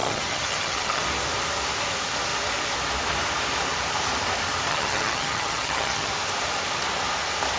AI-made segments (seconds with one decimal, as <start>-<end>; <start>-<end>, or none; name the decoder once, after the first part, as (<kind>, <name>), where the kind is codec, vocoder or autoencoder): 0.0-1.0 (vocoder, HiFi-GAN); 4.7-6.1